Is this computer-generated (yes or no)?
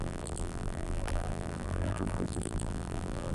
yes